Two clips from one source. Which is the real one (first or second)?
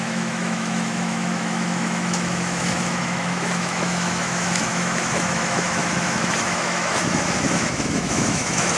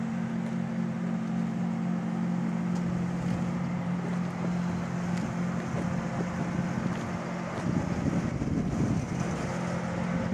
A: second